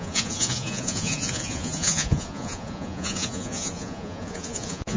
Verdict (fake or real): fake